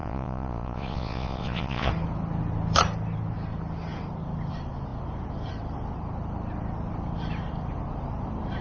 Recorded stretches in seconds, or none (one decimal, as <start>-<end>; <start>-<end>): 1.9-8.6